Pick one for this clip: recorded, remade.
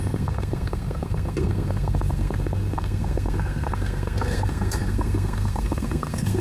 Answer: remade